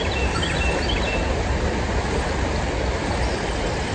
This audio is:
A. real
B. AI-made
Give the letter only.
A